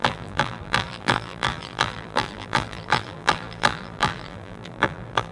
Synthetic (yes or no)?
yes